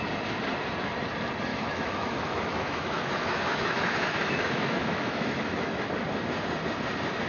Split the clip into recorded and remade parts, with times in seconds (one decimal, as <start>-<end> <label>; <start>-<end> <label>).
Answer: 0.0-1.5 recorded; 1.5-5.9 remade; 5.9-7.3 recorded